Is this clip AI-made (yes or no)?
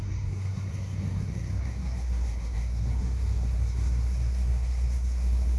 yes